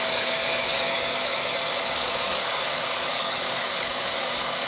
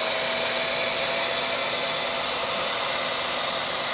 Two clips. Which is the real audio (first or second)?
second